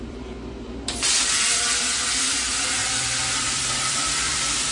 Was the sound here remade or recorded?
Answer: remade